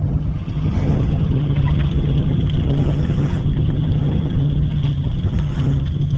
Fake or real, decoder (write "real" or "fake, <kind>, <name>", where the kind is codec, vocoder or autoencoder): fake, vocoder, HiFi-GAN